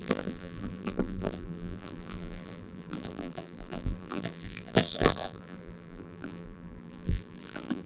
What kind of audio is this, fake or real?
fake